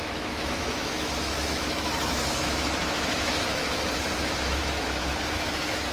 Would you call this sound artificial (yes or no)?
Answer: yes